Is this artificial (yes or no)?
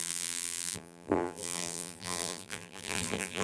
yes